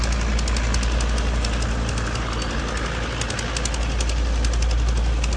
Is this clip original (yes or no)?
yes